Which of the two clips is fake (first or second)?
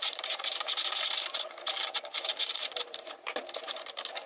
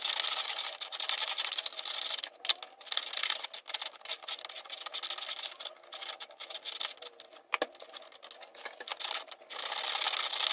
first